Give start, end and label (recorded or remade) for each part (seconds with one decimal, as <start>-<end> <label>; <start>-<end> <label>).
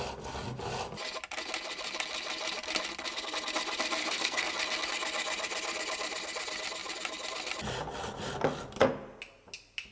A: 0.0-4.0 recorded; 4.0-4.5 remade; 4.5-9.9 recorded